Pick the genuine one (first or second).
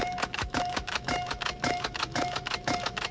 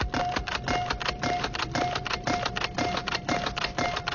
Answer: second